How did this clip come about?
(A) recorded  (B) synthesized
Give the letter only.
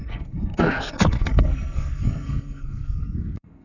B